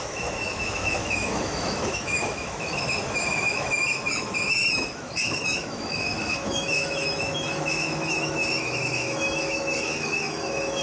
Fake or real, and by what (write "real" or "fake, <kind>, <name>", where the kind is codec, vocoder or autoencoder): fake, autoencoder, DAC-VAE